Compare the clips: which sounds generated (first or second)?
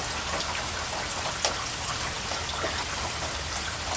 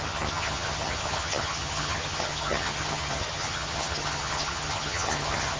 second